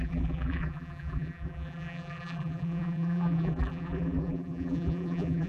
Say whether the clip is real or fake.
fake